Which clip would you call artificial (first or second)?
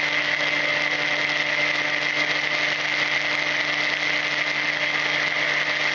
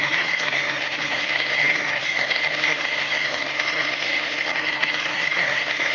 second